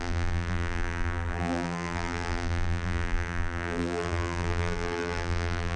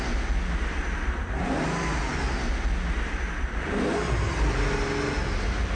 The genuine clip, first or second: second